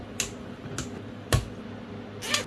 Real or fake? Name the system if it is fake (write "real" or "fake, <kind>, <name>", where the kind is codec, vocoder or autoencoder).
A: real